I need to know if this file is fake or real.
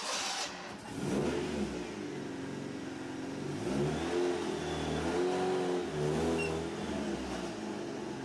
real